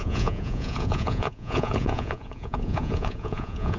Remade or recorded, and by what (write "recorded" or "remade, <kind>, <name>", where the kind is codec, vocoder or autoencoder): remade, vocoder, Vocos